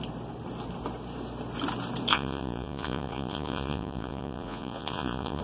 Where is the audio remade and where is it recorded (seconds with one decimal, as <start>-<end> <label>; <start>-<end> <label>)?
0.0-2.1 recorded; 2.1-5.4 remade